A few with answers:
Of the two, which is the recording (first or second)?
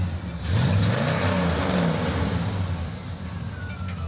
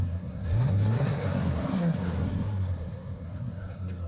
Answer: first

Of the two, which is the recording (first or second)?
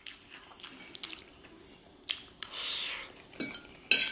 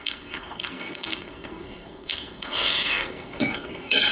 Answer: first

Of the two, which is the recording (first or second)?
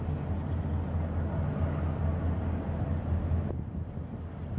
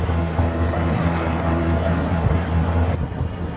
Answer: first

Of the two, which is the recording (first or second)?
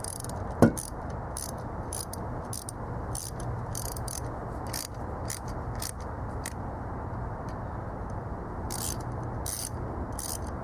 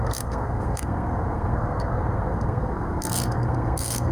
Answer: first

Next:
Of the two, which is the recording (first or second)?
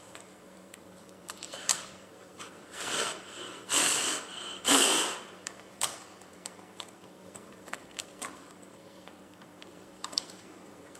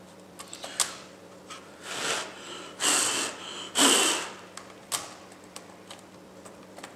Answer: second